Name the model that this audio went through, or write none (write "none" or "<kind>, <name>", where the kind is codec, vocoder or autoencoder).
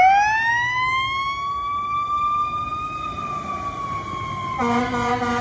none